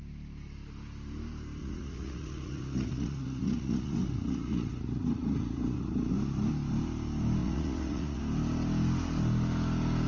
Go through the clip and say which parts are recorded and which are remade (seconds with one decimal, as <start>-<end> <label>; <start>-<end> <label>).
0.0-1.6 recorded; 1.6-6.1 remade; 6.1-7.4 recorded; 7.4-8.2 remade; 8.2-10.1 recorded